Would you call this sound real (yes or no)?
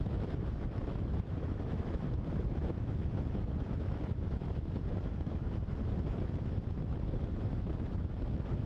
no